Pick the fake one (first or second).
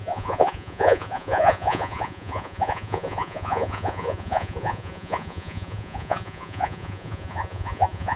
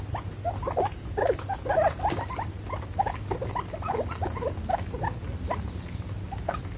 first